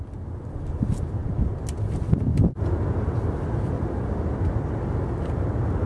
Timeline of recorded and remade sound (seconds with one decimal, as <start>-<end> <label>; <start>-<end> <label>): 0.0-5.9 recorded